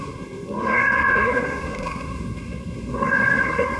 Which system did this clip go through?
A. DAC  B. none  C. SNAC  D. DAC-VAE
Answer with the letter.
C